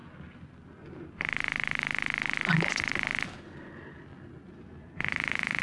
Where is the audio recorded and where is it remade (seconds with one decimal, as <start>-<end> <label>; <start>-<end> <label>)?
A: 0.0-4.5 recorded; 4.5-5.6 remade